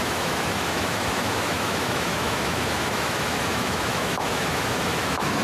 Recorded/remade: remade